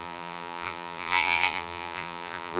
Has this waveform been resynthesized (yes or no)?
yes